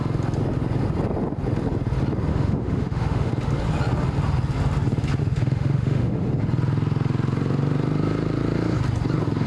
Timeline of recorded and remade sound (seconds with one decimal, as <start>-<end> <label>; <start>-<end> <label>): 0.0-2.3 recorded; 2.3-3.3 remade; 3.3-5.2 recorded; 5.2-6.3 remade; 6.3-9.5 recorded